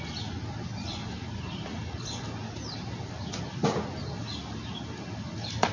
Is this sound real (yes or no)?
yes